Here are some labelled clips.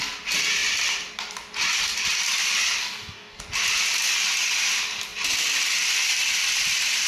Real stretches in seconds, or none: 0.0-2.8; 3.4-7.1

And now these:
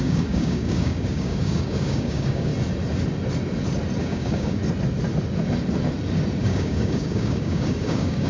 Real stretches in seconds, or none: 2.5-4.0; 4.6-6.4

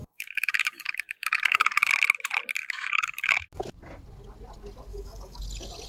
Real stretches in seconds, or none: 1.9-2.6; 3.4-4.9; 5.4-5.9

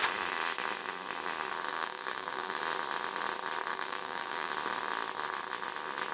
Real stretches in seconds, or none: 0.0-1.7; 2.6-3.7; 4.5-6.1

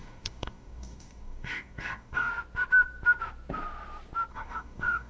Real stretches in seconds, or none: 2.3-4.3

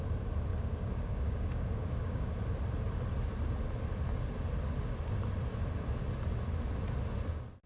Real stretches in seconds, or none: 0.0-0.5; 2.4-7.7